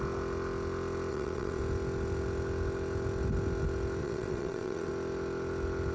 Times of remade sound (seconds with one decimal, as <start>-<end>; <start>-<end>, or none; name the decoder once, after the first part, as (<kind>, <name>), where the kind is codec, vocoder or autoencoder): 1.1-1.6 (vocoder, WaveNeXt); 4.0-4.9